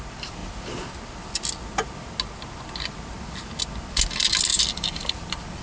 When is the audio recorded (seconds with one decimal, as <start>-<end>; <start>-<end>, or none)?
0.0-4.5